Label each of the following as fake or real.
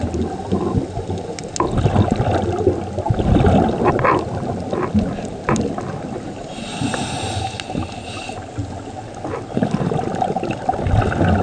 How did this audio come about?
real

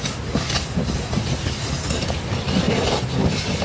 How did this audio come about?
real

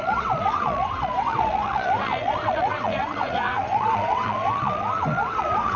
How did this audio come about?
fake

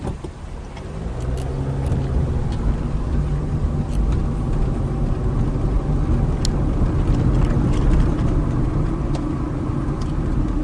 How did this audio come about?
real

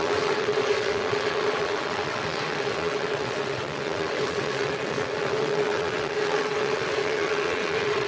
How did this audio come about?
fake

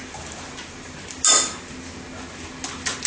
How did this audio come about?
real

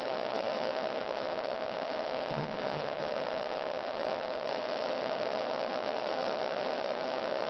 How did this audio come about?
fake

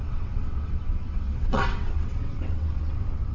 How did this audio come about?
fake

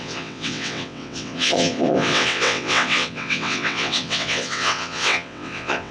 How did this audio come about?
fake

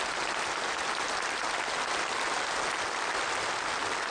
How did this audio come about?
real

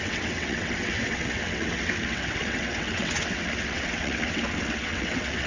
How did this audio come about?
fake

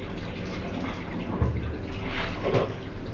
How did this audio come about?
real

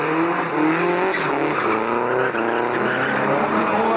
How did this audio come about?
real